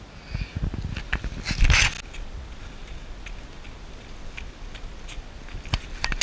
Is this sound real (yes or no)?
yes